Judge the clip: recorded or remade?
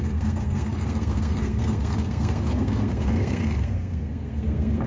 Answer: remade